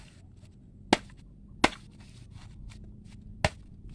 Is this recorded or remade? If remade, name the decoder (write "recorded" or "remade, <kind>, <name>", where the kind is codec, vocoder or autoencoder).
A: recorded